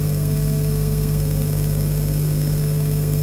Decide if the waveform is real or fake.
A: fake